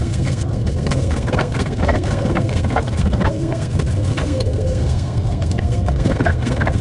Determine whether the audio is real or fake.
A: fake